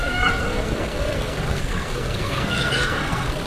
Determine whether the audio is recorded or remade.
remade